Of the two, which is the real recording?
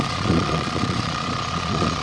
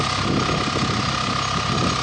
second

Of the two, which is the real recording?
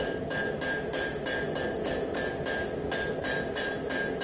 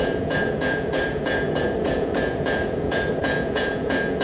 first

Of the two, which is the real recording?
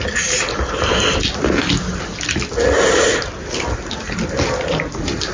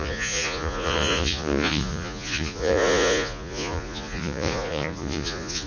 first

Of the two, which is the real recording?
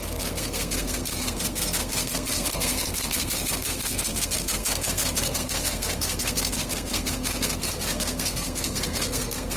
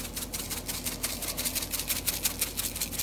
second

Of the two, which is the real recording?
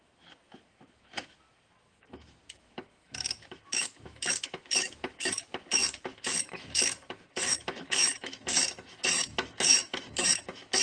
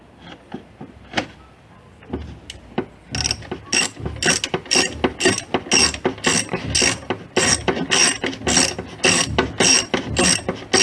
second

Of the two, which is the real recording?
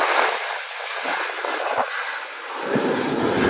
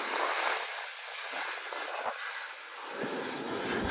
second